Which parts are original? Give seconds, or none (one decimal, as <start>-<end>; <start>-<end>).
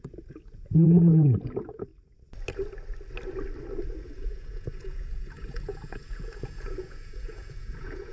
1.9-4.0